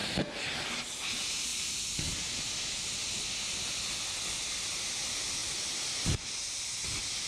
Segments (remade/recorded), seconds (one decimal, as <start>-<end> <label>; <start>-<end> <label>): 0.0-7.3 recorded